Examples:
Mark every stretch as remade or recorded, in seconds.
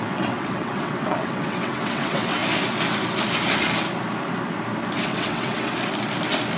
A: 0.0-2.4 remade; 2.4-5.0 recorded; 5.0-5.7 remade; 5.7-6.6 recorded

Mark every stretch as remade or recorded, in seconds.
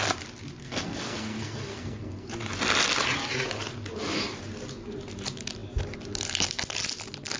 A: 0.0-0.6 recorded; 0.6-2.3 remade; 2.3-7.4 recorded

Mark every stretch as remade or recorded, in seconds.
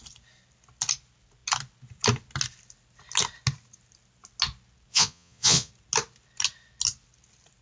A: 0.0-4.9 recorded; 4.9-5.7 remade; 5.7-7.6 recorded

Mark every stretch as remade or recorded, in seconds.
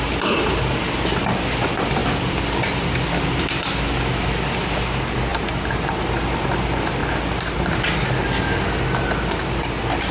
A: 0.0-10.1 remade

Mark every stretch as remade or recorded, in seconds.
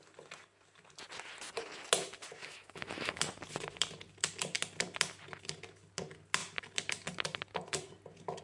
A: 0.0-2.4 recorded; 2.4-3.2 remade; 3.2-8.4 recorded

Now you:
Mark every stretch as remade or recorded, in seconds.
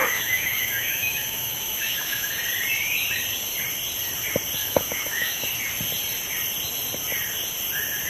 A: 0.0-2.3 remade; 2.3-4.6 recorded; 4.6-5.4 remade; 5.4-8.1 recorded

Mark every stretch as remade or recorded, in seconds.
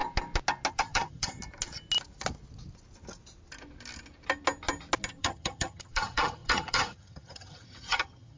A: 0.0-0.7 recorded; 0.7-1.4 remade; 1.4-5.2 recorded; 5.2-8.4 remade